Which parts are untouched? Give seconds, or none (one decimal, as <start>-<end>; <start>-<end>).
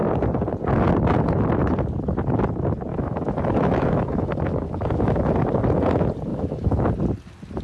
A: 0.0-2.9; 5.2-6.3; 6.9-7.6